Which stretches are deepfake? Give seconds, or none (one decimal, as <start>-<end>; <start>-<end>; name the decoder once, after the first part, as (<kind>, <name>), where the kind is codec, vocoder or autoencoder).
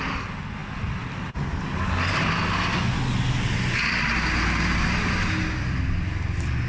none